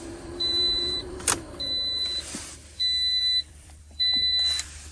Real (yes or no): no